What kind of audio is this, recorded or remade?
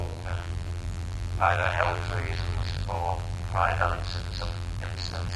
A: remade